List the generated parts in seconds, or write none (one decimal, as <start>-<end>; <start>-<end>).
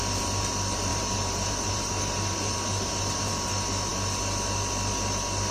0.9-3.5